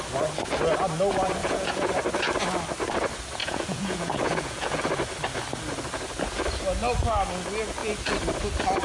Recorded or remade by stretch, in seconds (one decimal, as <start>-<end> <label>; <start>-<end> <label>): 0.0-1.4 recorded; 1.4-1.9 remade; 1.9-3.4 recorded; 3.4-4.8 remade; 4.8-8.8 recorded